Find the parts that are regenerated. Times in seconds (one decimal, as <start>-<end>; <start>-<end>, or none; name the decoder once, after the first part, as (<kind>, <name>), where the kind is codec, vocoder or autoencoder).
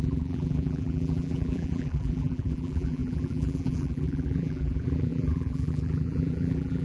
0.0-6.8 (vocoder, BigVGAN v2)